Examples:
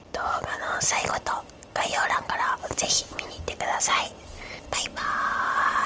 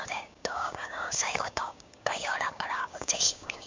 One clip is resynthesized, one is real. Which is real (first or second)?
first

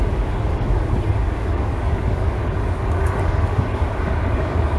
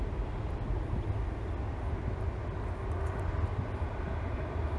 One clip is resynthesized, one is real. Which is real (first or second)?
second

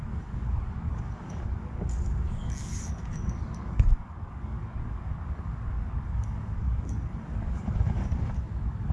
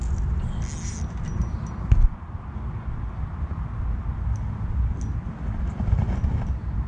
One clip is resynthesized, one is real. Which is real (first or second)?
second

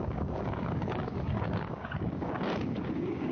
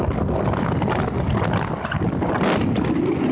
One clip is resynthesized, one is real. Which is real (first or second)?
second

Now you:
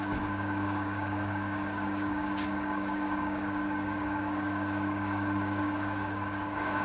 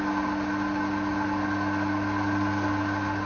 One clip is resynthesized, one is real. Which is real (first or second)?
second